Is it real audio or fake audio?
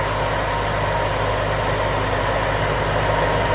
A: real